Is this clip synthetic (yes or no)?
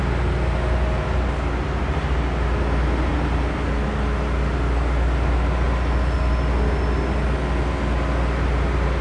no